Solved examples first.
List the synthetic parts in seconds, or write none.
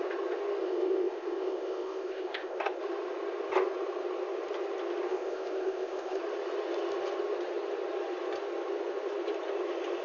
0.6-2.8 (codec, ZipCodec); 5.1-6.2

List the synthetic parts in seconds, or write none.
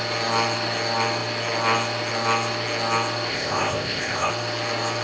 3.3-4.3 (codec, ZipCodec)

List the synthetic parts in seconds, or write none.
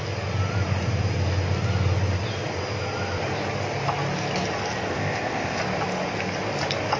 4.9-5.6 (codec, ZipCodec)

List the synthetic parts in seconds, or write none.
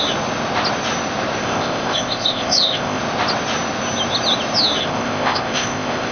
1.4-3.0 (codec, ZipCodec); 4.8-6.1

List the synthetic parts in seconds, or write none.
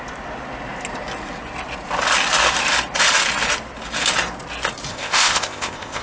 4.9-6.0 (codec, ZipCodec)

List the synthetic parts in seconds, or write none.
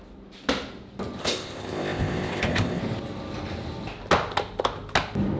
1.2-2.8 (codec, ZipCodec)